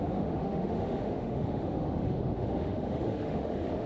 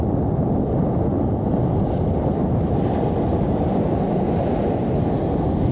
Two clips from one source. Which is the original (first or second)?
second